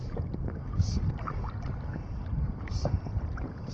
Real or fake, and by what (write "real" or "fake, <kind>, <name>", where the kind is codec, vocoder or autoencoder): real